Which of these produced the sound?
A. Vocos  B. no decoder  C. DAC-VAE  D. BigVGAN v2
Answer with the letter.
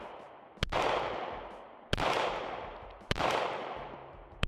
D